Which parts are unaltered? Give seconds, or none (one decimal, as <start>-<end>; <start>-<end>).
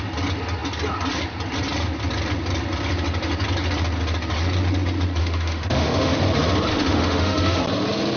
0.0-5.2; 6.2-6.7; 7.6-8.2